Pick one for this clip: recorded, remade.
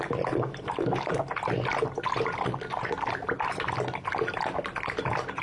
recorded